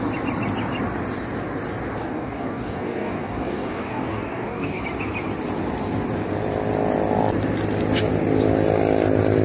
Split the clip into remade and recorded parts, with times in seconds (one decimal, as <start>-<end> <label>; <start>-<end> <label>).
0.0-2.0 recorded; 2.0-4.8 remade; 4.8-9.4 recorded